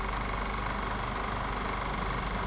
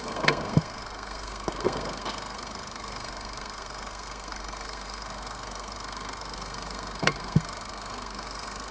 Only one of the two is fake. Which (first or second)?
second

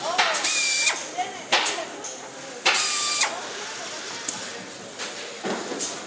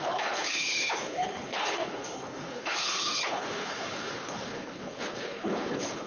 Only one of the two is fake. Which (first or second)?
second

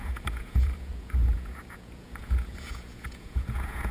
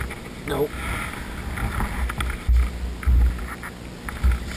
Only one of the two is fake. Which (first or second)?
first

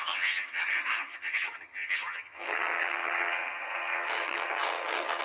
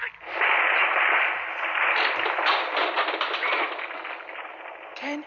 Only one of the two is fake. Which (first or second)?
first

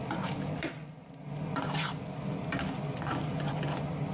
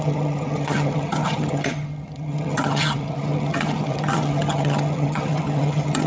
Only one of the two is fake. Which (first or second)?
second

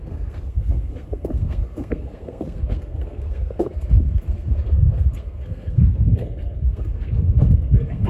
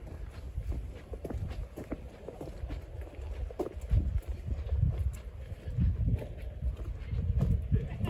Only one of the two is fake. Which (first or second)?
first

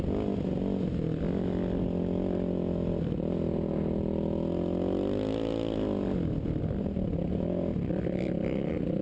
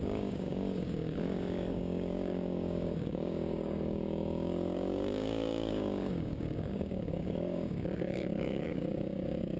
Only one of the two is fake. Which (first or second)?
second